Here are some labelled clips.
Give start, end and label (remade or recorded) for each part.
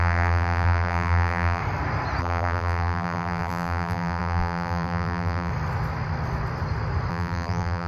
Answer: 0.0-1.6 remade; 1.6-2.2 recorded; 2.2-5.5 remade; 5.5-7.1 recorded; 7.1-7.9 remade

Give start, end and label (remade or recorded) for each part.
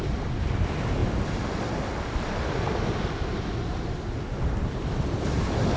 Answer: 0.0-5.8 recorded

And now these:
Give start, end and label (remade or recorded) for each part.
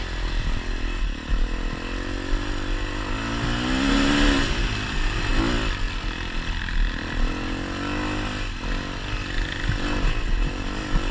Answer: 0.0-11.1 recorded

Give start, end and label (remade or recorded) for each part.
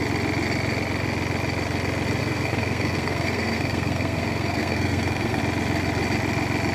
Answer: 0.0-2.2 recorded; 2.2-5.4 remade; 5.4-6.7 recorded